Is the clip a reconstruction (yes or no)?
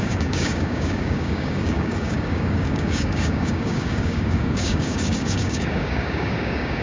yes